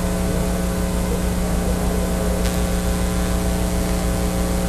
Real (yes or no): yes